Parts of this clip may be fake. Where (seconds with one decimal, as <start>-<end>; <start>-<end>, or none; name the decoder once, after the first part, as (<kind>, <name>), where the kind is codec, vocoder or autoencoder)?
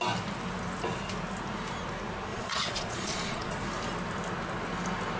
2.3-3.5 (vocoder, Vocos)